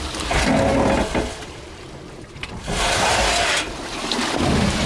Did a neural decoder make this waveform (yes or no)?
no